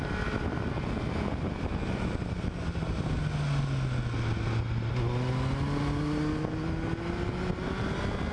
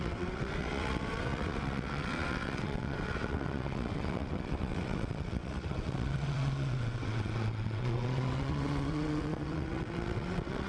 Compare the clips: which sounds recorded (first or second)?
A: first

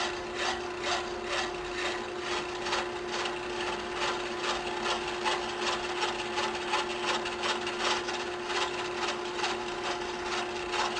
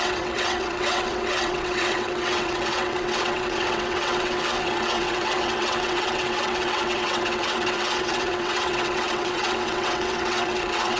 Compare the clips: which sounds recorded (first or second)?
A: first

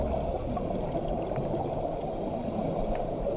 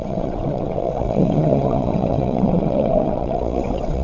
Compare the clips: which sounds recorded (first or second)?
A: first